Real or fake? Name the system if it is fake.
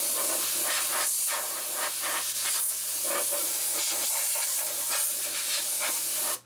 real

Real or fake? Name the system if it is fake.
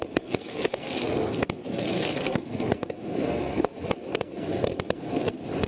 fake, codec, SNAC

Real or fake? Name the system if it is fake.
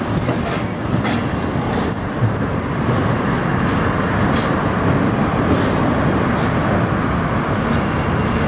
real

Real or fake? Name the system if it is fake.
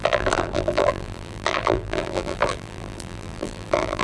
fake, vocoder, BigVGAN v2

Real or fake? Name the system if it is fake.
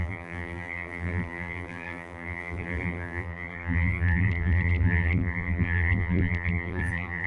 fake, vocoder, BigVGAN v2